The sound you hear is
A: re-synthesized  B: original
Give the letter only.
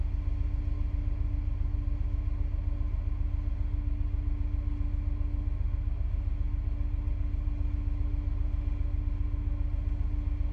B